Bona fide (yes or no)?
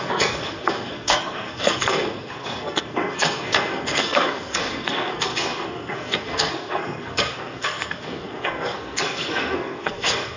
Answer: no